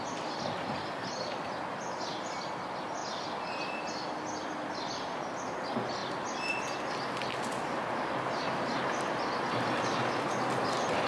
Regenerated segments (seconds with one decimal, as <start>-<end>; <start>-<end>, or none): none